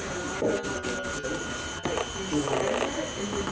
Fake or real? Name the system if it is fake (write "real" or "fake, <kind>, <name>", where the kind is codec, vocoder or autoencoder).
real